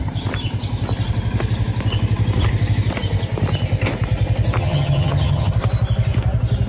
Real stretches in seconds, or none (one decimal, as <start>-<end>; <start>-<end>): 0.0-4.6; 5.5-6.7